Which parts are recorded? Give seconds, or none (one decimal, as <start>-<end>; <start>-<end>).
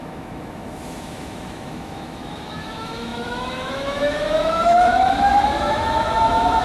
none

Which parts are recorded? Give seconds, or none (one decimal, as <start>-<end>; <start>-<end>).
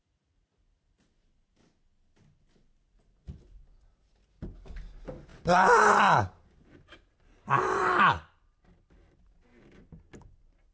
0.0-5.3; 9.2-10.7